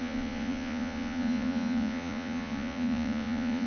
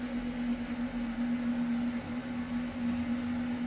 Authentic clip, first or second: second